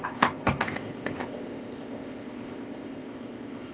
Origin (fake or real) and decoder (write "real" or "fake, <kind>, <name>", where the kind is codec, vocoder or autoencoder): fake, codec, ZipCodec